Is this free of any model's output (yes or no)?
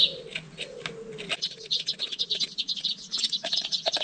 yes